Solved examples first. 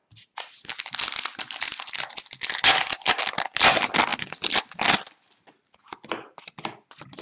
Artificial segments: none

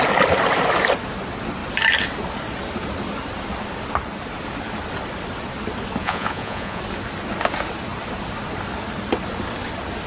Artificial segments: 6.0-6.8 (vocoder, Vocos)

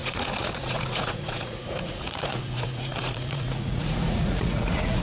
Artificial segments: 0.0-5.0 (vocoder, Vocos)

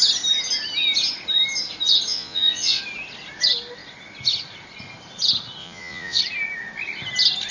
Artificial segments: 2.1-2.8 (vocoder, Vocos); 5.6-6.2

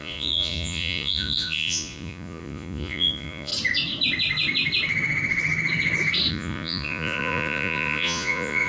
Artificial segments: 0.0-3.5 (vocoder, Vocos); 6.3-8.7

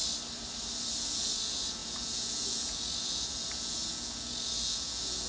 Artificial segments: 1.0-5.3 (vocoder, Vocos)

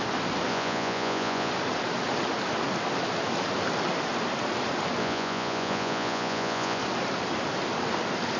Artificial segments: 0.5-1.5 (vocoder, Vocos); 5.0-6.8